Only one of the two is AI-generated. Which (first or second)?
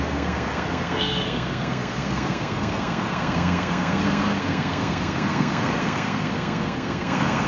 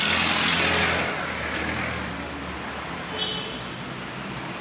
first